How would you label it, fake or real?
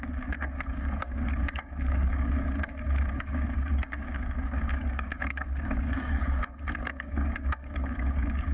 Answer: fake